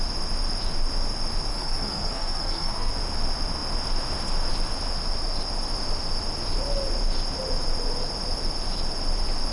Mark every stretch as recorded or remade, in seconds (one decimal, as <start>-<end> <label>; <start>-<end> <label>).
0.0-1.5 recorded; 1.5-2.9 remade; 2.9-9.5 recorded